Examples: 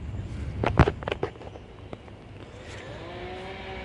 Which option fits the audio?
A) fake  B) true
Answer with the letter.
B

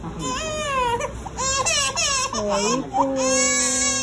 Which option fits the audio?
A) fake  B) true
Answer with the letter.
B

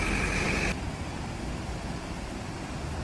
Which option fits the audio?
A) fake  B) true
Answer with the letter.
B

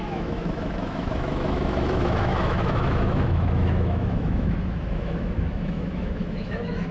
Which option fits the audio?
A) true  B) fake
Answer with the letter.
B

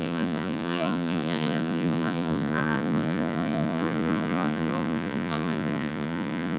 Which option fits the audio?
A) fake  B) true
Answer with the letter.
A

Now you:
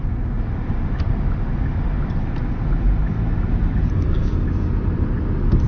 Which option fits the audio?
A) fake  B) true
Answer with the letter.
B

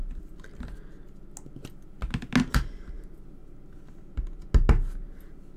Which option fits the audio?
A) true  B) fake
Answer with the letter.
A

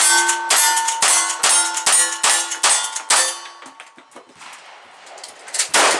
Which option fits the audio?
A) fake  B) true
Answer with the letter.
B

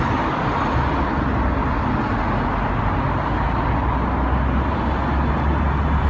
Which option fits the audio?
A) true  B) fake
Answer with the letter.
A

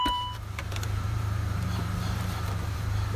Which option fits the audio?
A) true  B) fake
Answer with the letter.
B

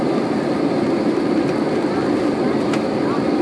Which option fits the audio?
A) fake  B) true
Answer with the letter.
B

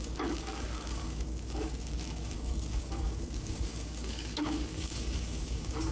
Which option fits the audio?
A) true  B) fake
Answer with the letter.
B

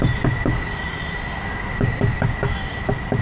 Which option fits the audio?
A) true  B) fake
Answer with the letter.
A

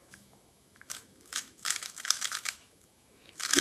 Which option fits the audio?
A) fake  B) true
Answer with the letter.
A